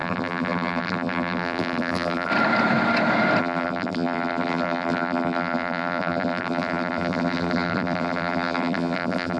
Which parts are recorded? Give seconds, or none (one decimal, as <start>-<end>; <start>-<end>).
2.3-3.4